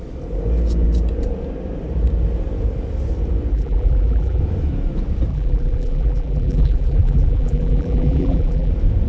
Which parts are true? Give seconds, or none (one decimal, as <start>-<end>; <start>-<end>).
0.0-3.5; 4.4-5.3; 8.7-9.1